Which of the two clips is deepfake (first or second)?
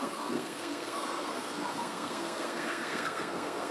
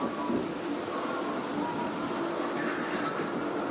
first